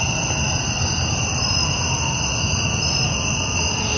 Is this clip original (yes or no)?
yes